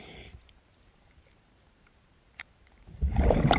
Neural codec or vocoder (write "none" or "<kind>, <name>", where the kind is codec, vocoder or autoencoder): vocoder, BigVGAN v2